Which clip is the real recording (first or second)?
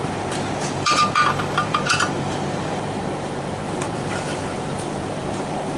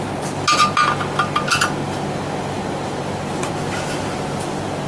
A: second